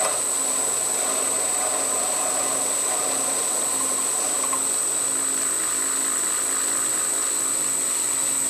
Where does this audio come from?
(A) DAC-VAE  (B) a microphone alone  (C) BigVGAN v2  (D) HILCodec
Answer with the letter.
B